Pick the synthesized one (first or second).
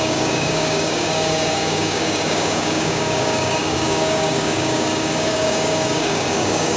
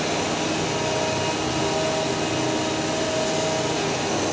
first